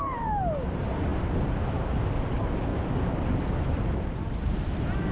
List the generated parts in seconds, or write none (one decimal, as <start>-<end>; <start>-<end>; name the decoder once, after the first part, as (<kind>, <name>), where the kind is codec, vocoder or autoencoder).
2.7-3.9 (vocoder, BigVGAN v2)